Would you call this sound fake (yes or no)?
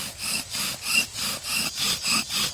no